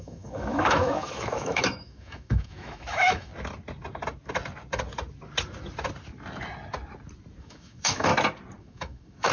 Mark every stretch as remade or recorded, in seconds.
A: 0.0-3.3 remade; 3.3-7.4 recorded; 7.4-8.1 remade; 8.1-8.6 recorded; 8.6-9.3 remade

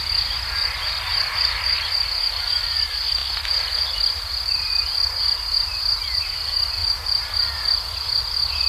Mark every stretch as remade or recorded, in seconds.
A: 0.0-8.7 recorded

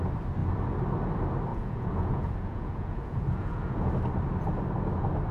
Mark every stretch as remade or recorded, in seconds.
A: 0.0-1.5 recorded; 1.5-3.9 remade; 3.9-5.3 recorded

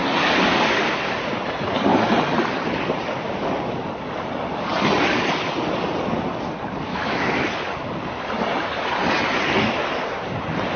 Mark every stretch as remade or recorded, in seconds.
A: 0.0-6.9 recorded; 6.9-7.5 remade; 7.5-10.8 recorded